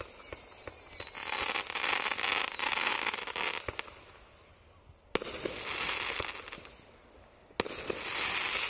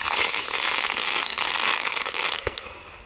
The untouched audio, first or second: first